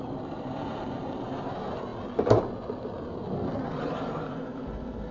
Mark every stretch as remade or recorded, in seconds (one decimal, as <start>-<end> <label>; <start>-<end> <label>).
0.0-1.9 remade; 1.9-3.8 recorded; 3.8-5.1 remade